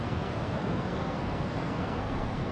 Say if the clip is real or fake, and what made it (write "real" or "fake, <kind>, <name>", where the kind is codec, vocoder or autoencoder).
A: fake, codec, SNAC